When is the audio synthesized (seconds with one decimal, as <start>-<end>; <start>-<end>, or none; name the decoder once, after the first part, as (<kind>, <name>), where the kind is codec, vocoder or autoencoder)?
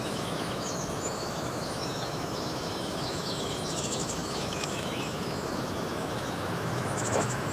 0.0-7.5 (autoencoder, DAC-VAE)